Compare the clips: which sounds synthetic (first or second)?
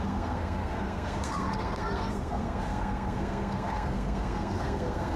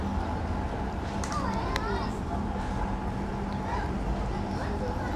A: first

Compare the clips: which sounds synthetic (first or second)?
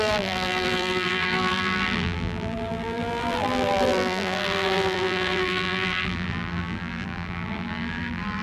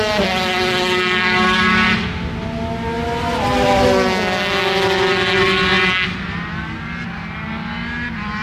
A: first